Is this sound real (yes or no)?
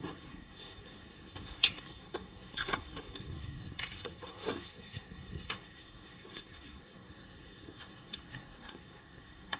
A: no